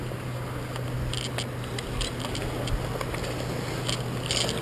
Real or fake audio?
real